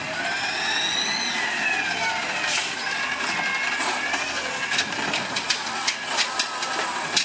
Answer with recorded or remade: recorded